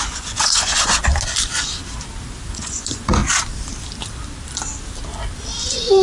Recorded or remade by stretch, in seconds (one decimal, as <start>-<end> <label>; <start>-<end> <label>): 0.0-1.0 remade; 1.0-2.5 recorded; 2.5-3.2 remade; 3.2-5.6 recorded; 5.6-6.0 remade